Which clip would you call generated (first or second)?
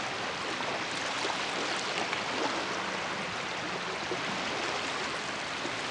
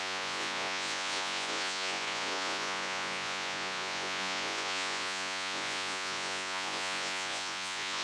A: second